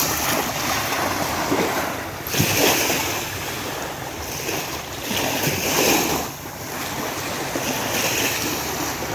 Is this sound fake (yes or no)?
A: no